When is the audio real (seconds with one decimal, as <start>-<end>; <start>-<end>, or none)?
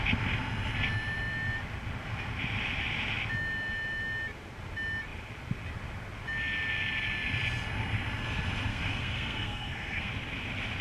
0.0-8.7; 10.1-10.8